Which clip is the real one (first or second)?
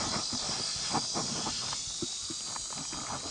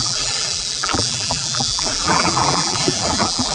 first